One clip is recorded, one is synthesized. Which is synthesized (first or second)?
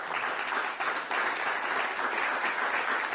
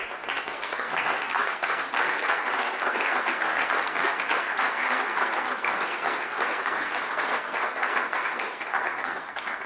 second